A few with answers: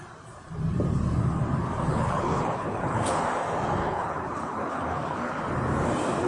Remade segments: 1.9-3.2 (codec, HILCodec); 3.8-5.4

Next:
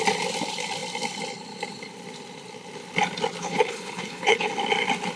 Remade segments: 3.4-4.5 (codec, HILCodec)

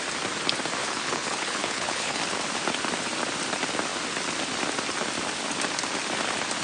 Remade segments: 0.8-2.2 (codec, HILCodec)

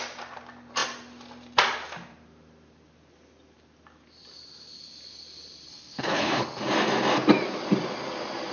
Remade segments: 5.7-6.6 (codec, HILCodec)

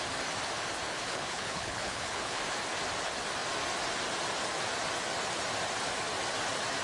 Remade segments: 0.9-2.4 (codec, HILCodec)

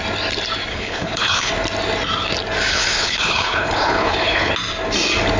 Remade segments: 0.7-1.5 (codec, HILCodec); 2.7-4.5

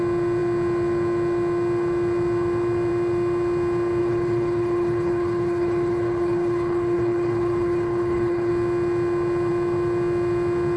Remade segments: 4.0-8.5 (codec, HILCodec)